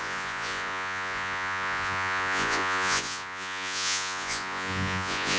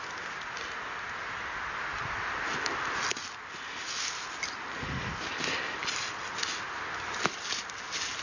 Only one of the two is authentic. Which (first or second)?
second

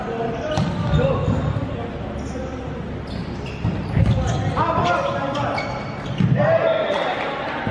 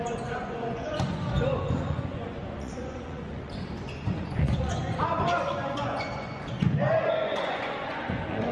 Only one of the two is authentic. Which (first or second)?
first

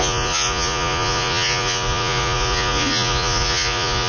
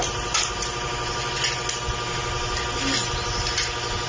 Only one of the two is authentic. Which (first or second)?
second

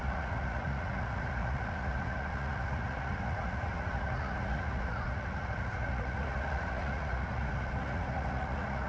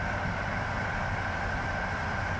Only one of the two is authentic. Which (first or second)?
second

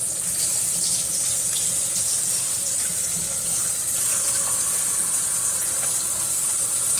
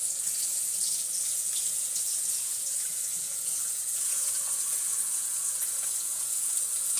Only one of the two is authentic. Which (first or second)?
first